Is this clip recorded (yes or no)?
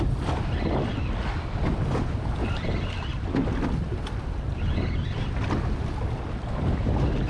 yes